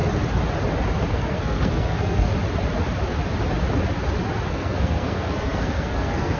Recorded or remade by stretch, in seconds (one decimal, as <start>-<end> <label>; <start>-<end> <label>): 0.0-1.1 recorded; 1.1-2.3 remade; 2.3-4.5 recorded; 4.5-6.4 remade